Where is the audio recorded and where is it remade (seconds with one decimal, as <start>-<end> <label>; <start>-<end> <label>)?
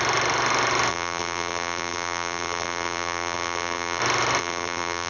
0.0-0.9 recorded; 0.9-4.0 remade; 4.0-4.4 recorded; 4.4-5.1 remade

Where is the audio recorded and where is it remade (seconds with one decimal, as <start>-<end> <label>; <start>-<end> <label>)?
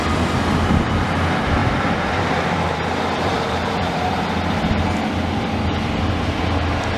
0.0-1.6 recorded; 1.6-4.1 remade; 4.1-7.0 recorded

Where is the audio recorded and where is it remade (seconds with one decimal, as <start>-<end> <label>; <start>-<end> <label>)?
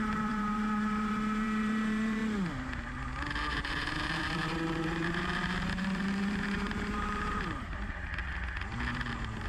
0.0-2.2 remade; 2.2-3.5 recorded; 3.5-8.2 remade; 8.2-9.1 recorded; 9.1-9.5 remade